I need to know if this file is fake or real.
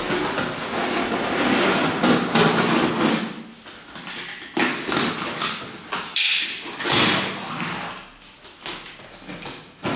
real